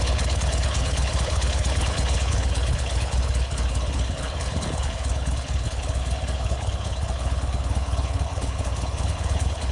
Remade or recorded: remade